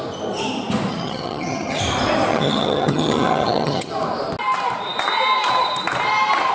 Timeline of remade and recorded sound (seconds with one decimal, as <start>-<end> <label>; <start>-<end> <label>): 0.0-0.9 recorded; 0.9-1.8 remade; 1.8-2.3 recorded; 2.3-3.9 remade; 3.9-6.5 recorded